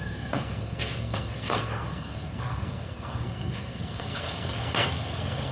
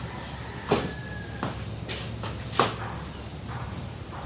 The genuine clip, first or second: second